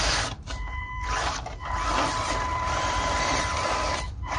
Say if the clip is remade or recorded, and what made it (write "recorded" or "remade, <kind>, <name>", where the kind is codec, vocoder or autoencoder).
remade, vocoder, BigVGAN v2